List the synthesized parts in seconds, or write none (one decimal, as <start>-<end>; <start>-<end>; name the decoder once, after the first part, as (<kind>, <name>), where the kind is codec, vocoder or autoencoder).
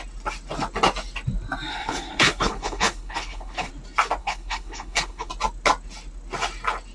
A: 1.7-3.7 (codec, HILCodec); 4.2-5.3